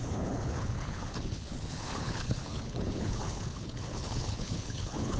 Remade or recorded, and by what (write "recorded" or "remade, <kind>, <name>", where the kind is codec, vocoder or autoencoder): remade, codec, HILCodec